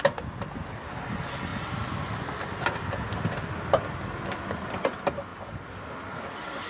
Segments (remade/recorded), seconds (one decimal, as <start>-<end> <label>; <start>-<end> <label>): 0.0-6.7 recorded